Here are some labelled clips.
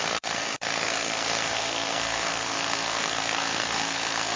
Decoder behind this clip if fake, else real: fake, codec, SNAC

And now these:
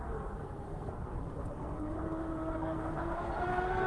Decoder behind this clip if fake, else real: fake, codec, SNAC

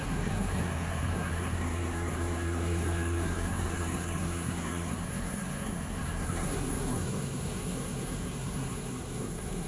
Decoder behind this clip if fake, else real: fake, codec, SNAC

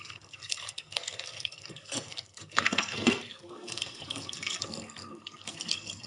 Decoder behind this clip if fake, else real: fake, codec, SNAC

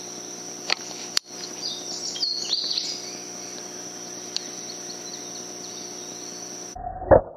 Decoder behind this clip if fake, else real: real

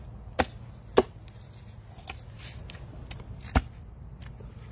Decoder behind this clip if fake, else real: real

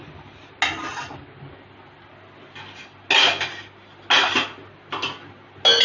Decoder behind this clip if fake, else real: real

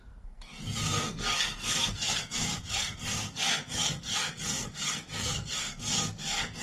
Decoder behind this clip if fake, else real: fake, codec, SNAC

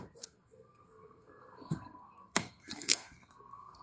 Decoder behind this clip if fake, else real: fake, codec, SNAC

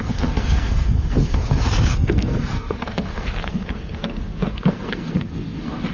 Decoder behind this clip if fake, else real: fake, codec, SNAC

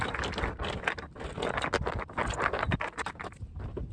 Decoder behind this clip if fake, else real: real